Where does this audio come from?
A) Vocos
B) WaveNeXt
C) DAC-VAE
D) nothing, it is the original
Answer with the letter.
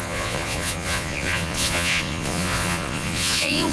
A